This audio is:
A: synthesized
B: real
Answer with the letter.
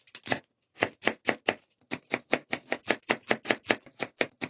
B